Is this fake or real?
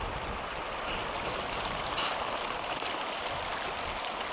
real